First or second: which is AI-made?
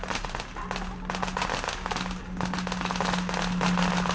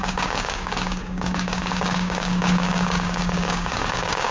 second